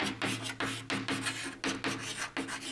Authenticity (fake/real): real